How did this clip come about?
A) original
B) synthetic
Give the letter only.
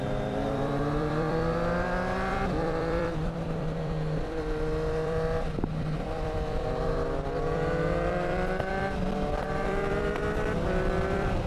B